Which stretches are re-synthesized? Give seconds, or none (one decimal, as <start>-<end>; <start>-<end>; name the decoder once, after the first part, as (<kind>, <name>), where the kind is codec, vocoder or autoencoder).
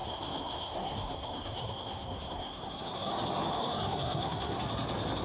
0.0-3.1 (codec, SNAC); 3.6-4.6